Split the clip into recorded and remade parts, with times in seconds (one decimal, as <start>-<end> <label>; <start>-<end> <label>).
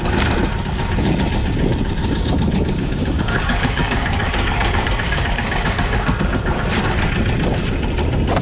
0.0-2.0 recorded; 2.0-6.2 remade; 6.2-8.4 recorded